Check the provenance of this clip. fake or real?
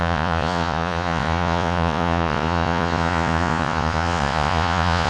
fake